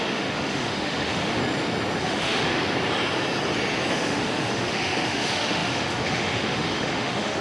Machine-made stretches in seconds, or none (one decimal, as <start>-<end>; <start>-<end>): 0.0-1.4; 2.0-2.6; 3.9-7.4